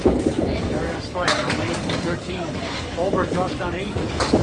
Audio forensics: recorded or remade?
remade